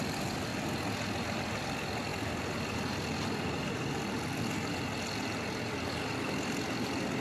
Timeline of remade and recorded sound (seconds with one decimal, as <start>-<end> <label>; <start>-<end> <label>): 0.0-7.2 recorded